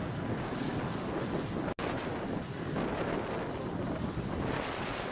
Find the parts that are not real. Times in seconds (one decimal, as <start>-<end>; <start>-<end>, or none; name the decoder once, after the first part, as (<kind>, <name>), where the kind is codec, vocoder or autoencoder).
none